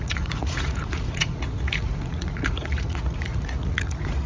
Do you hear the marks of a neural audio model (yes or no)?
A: yes